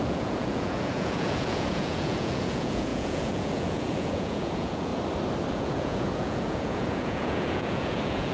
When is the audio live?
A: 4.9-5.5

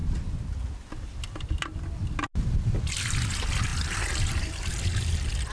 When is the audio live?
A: 0.0-5.5

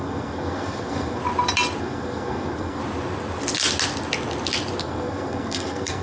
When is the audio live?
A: 1.2-1.8; 2.8-4.8

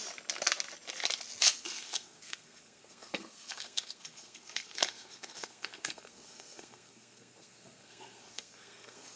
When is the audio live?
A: 0.0-1.4

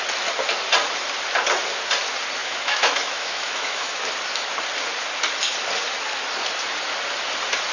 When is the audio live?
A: 0.0-2.4; 4.1-7.7

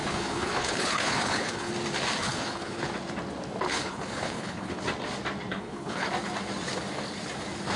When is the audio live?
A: 1.7-2.2; 2.8-3.7; 4.8-5.5; 6.1-7.8

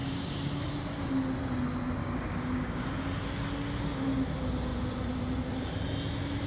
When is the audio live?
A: 0.6-2.0; 3.0-6.5

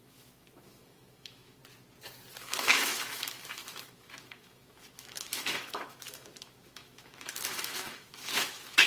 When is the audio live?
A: 1.6-2.4